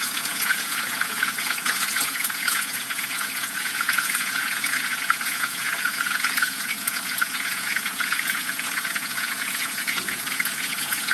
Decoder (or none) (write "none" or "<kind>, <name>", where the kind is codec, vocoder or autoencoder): vocoder, Vocos